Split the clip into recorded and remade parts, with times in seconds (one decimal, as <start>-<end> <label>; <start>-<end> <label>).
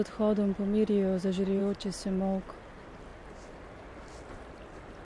0.0-5.0 recorded